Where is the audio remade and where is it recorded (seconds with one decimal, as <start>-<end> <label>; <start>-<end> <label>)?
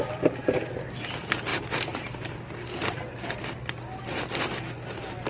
0.0-5.3 recorded